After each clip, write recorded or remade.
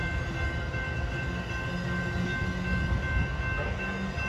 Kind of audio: recorded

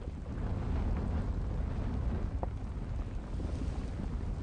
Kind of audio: recorded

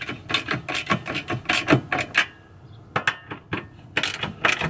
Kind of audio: recorded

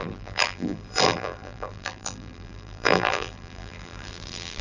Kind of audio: remade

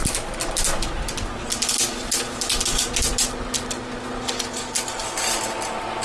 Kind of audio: recorded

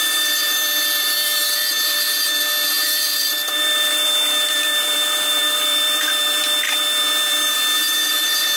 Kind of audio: remade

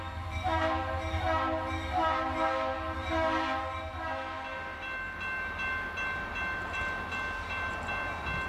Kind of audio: recorded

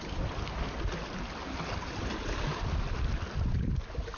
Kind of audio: recorded